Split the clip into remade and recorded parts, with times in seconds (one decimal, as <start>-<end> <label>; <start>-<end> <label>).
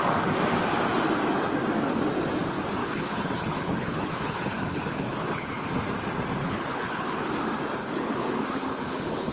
0.0-2.8 recorded; 2.8-5.7 remade; 5.7-6.4 recorded; 6.4-7.3 remade; 7.3-7.8 recorded; 7.8-9.3 remade